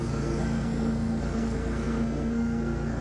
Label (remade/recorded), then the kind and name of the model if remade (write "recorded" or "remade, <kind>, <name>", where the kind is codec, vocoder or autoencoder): remade, codec, SNAC